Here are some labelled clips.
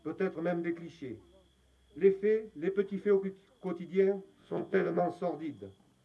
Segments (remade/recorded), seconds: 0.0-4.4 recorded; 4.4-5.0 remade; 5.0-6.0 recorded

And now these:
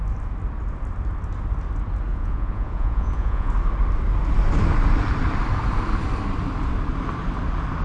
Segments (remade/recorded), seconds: 0.0-2.1 recorded; 2.1-3.5 remade; 3.5-7.8 recorded

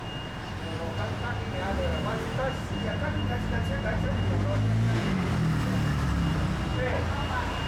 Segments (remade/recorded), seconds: 0.0-7.7 recorded

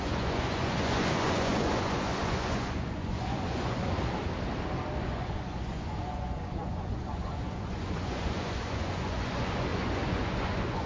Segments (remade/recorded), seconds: 0.0-3.8 remade; 3.8-5.0 recorded; 5.0-10.9 remade